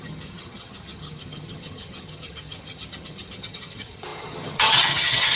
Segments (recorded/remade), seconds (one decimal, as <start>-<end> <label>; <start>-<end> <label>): 0.0-5.4 remade